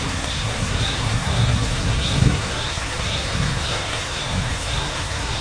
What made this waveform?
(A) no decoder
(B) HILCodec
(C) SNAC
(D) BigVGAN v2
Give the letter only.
C